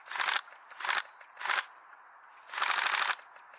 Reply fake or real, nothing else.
real